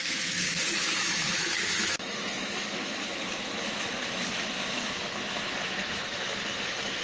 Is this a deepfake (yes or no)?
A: yes